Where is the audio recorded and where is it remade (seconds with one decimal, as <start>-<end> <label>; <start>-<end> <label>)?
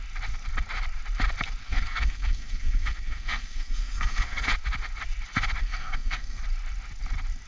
0.0-1.6 recorded; 1.6-4.5 remade; 4.5-5.6 recorded; 5.6-6.4 remade; 6.4-7.5 recorded